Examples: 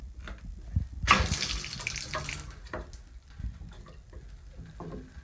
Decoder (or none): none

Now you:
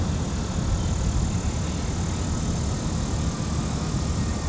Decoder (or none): none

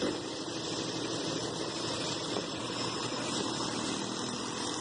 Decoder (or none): none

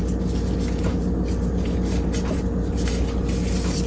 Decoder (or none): none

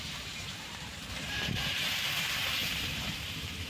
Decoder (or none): vocoder, BigVGAN v2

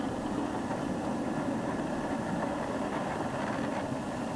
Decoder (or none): vocoder, BigVGAN v2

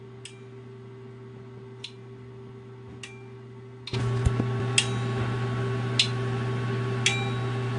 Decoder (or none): none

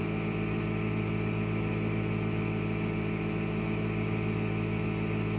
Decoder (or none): none